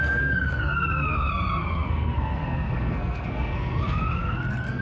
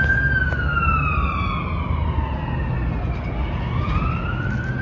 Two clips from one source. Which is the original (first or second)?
second